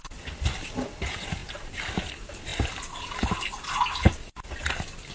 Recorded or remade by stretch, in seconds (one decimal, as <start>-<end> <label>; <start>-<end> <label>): 0.0-5.1 recorded